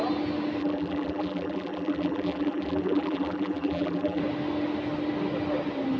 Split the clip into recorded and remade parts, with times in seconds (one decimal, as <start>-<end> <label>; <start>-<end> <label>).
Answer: 0.0-0.6 recorded; 0.6-4.2 remade; 4.2-6.0 recorded